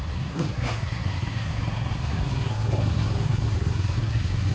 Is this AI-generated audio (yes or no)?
yes